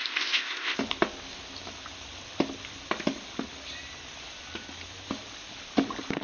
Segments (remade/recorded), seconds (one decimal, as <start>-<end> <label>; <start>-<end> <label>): 0.0-0.8 remade; 0.8-6.2 recorded